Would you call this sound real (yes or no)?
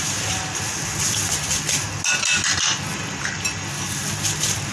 yes